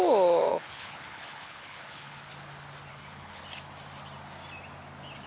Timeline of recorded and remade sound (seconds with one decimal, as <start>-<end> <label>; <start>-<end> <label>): 0.0-0.5 recorded; 0.5-2.3 remade; 2.3-2.9 recorded; 2.9-3.4 remade; 3.4-5.3 recorded